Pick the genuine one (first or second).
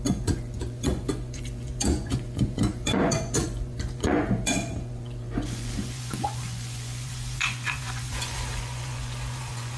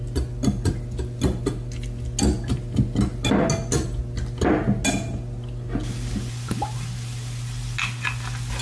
second